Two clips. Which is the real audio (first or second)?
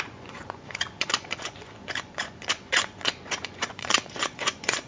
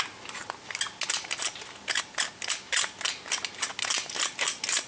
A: second